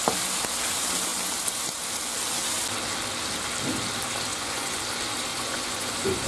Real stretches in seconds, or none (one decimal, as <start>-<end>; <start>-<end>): 0.0-4.3; 4.8-5.3